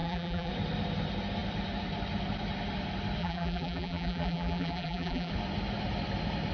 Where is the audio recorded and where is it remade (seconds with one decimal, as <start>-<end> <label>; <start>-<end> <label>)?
0.0-0.5 remade; 0.5-3.2 recorded; 3.2-5.3 remade; 5.3-6.5 recorded